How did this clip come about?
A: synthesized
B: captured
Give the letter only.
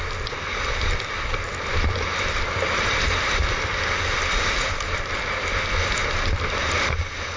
B